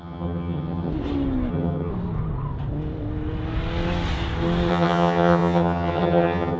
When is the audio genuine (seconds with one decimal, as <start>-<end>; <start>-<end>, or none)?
0.9-1.5; 1.9-4.7

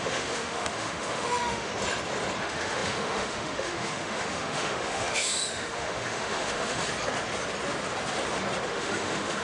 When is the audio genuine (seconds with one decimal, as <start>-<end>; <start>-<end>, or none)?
1.7-2.4; 6.8-8.7

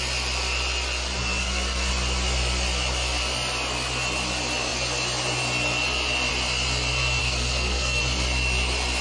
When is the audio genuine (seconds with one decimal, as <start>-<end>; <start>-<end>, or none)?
0.0-1.4; 1.9-7.2; 8.0-9.0

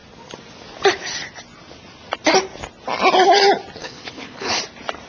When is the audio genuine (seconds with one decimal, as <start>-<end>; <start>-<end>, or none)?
0.0-3.8; 4.6-5.1

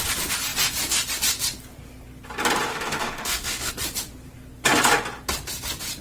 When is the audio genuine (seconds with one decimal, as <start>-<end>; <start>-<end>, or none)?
0.0-2.7; 3.7-6.0

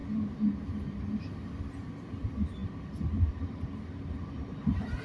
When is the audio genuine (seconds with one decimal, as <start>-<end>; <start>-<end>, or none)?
0.0-5.0

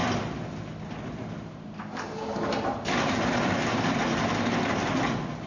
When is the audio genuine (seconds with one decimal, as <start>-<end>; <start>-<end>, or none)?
0.0-5.5